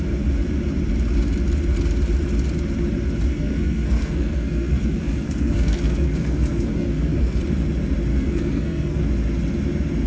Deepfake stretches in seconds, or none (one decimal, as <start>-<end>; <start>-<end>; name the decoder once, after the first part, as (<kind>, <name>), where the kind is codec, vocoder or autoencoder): 3.3-7.4 (codec, SNAC); 8.1-9.0

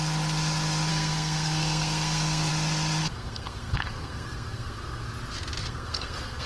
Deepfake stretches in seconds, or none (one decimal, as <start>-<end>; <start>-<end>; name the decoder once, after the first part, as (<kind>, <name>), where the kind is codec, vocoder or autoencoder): 0.9-2.5 (codec, SNAC); 3.0-5.0; 5.6-6.5